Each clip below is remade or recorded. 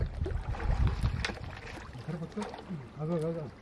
recorded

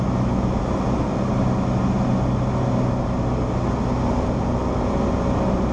recorded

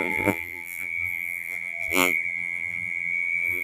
remade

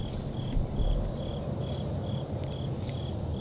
recorded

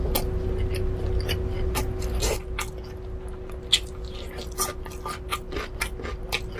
recorded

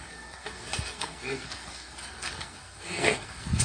remade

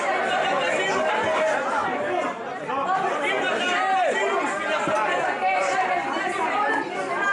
recorded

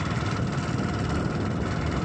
recorded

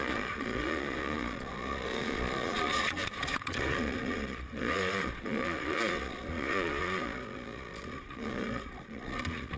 remade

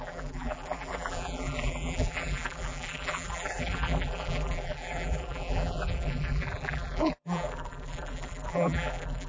remade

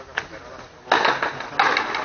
recorded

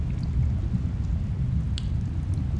recorded